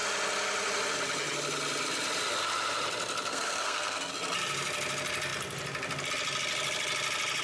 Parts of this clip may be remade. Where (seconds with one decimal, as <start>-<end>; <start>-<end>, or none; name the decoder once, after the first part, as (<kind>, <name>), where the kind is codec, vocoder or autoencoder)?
3.3-4.1 (codec, SNAC)